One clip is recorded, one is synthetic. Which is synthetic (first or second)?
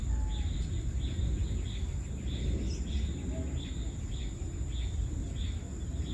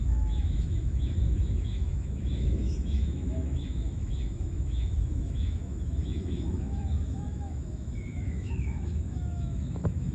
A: second